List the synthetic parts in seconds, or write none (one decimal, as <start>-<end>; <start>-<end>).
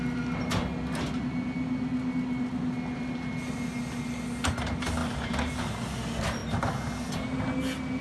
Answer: none